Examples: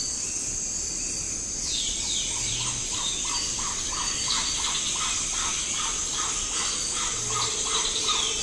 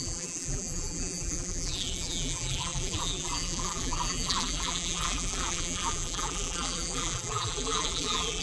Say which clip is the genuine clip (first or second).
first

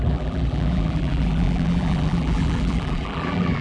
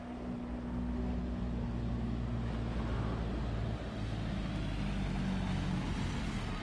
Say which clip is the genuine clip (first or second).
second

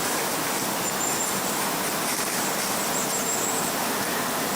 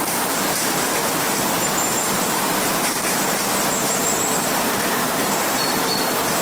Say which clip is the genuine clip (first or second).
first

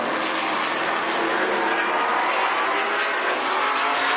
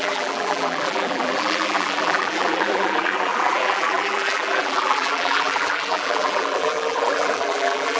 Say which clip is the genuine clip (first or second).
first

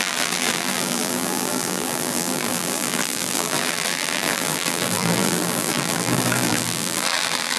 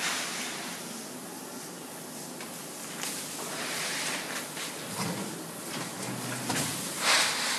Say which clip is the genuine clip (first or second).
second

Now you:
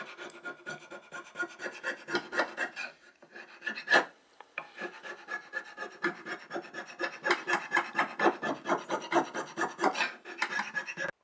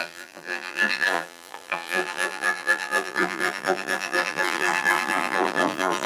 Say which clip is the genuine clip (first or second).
first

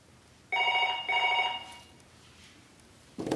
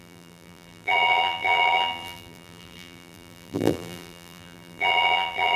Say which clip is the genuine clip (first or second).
first